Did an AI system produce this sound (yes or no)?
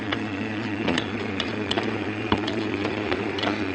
yes